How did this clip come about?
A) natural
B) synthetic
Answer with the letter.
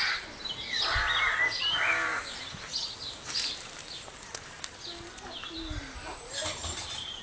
A